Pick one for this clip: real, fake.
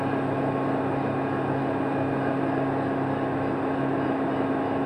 real